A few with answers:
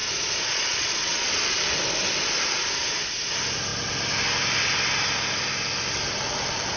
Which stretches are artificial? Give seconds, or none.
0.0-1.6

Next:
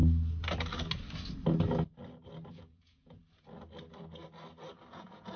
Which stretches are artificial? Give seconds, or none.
2.5-3.2; 4.9-5.4

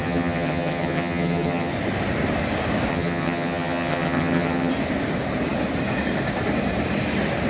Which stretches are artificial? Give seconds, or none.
0.0-1.7; 2.9-4.7

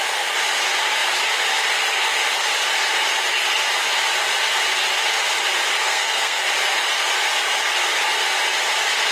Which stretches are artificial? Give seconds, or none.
5.8-6.5

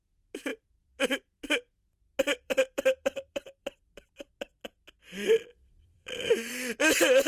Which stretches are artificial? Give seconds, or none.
0.5-1.4; 2.3-4.3; 5.5-6.3

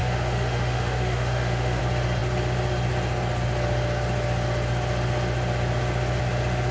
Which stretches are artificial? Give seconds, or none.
0.0-1.8